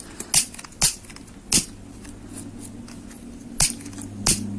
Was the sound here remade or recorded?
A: recorded